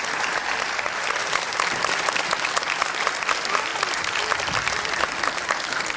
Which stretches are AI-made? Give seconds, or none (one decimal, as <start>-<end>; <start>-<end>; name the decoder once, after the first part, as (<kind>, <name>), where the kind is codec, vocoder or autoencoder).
3.7-4.6 (vocoder, BigVGAN v2)